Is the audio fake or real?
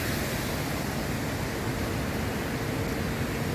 real